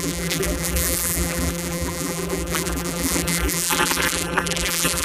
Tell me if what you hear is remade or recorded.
remade